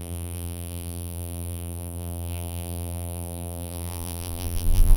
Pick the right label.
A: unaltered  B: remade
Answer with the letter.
B